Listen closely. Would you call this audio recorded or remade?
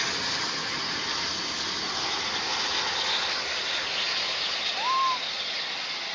recorded